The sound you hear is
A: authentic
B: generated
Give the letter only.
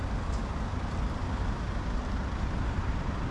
A